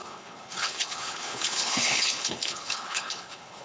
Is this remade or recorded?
remade